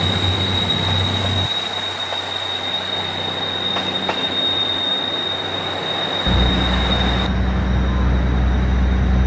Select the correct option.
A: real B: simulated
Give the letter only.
A